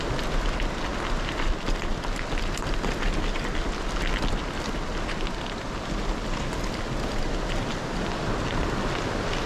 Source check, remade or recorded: recorded